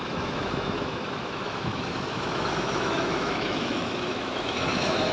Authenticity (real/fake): fake